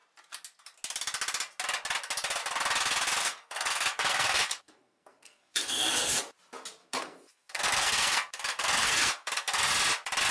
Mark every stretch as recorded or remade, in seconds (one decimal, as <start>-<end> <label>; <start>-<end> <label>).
0.0-3.2 recorded; 3.2-6.2 remade; 6.2-6.8 recorded; 6.8-9.7 remade; 9.7-10.3 recorded